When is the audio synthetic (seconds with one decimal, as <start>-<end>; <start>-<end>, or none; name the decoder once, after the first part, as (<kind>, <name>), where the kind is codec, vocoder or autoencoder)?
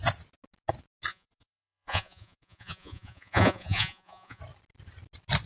1.1-4.4 (vocoder, Vocos)